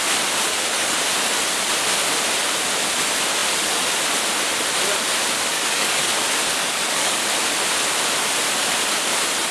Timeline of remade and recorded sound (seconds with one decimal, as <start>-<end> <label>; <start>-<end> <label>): 0.0-0.5 recorded; 0.5-1.0 remade; 1.0-5.5 recorded; 5.5-6.1 remade; 6.1-6.6 recorded; 6.6-7.2 remade; 7.2-9.5 recorded